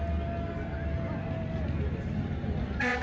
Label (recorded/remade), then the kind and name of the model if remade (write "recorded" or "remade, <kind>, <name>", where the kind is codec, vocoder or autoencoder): recorded